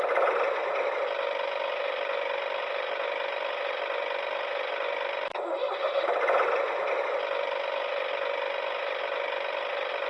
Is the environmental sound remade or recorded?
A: recorded